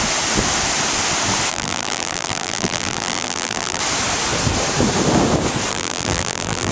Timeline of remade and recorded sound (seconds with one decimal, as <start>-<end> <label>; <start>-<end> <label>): 0.0-1.5 recorded; 1.5-3.8 remade; 3.8-5.7 recorded; 5.7-6.7 remade